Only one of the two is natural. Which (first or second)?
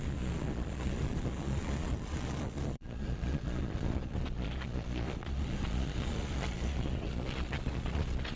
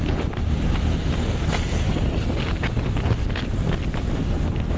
second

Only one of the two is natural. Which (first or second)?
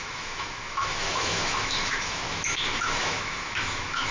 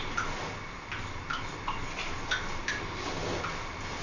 second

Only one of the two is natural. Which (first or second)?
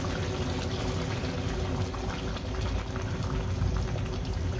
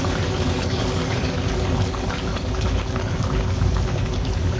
first